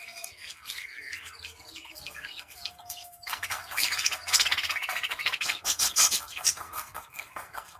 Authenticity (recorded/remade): remade